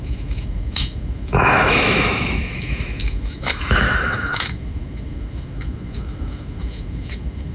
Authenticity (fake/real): fake